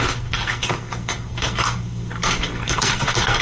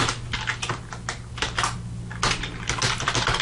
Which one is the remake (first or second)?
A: first